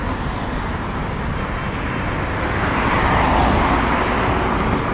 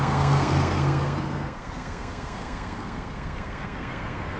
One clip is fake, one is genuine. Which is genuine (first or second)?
first